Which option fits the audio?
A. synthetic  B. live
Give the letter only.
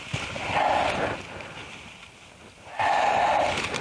B